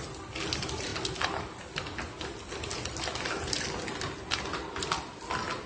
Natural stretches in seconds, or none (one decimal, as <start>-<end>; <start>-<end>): 0.0-5.7